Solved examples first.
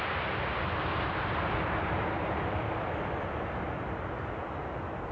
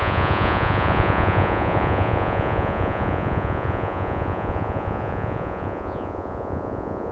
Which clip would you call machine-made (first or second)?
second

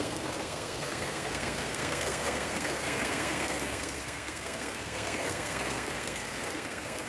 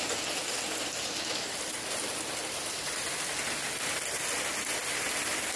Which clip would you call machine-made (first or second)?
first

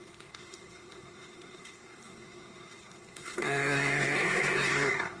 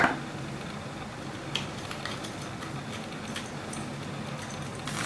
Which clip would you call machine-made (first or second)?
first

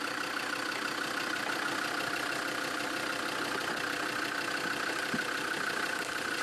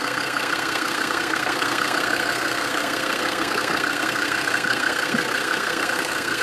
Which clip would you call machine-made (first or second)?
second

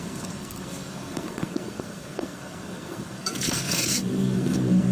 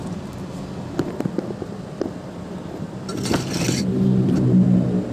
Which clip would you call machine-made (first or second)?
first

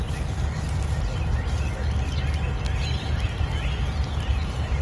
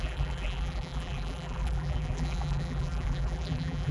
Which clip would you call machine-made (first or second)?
second